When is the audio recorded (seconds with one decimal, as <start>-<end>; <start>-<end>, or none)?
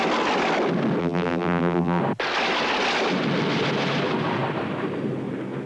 0.0-1.0; 2.0-5.7